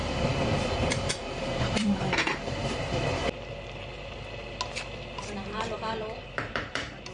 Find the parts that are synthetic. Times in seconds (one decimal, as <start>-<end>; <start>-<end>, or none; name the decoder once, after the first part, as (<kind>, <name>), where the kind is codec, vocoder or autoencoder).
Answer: 0.0-3.2 (vocoder, BigVGAN v2); 5.5-7.1